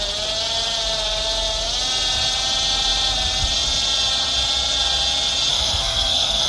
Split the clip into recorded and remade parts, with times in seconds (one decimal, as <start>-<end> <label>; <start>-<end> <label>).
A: 0.0-5.5 recorded; 5.5-6.5 remade